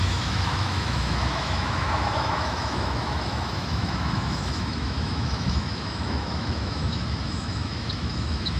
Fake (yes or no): yes